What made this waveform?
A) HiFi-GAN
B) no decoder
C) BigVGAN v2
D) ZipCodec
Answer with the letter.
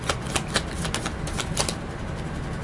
B